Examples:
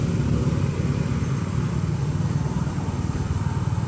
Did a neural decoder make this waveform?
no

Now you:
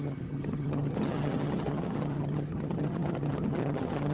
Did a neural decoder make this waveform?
yes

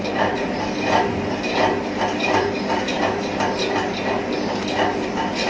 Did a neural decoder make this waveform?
no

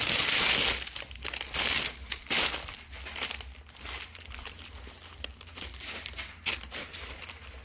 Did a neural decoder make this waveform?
no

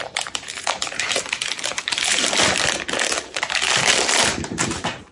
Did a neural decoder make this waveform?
yes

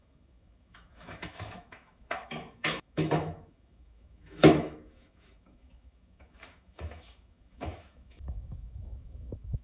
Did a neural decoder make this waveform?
yes